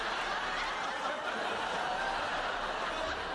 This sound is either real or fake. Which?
real